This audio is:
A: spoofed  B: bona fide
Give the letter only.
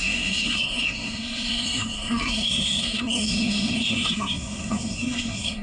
A